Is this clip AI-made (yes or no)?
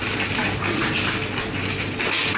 no